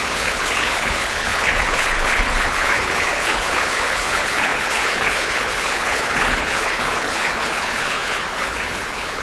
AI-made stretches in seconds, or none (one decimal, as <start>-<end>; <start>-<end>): 0.0-9.2